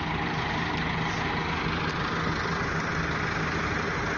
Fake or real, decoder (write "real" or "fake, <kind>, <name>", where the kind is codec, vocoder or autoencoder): real